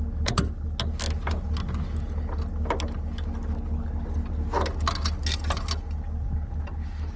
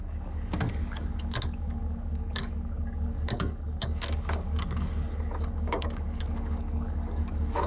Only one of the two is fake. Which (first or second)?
second